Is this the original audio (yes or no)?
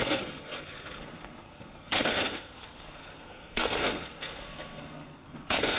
no